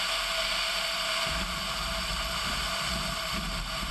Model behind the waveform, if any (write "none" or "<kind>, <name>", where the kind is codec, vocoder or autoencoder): none